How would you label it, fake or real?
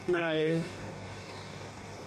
fake